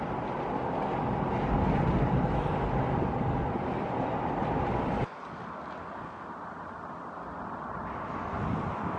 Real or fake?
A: real